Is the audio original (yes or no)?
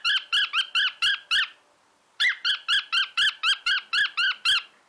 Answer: yes